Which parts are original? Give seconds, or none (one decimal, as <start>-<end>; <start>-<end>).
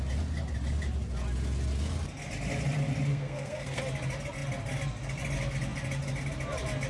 0.0-3.1; 3.8-6.9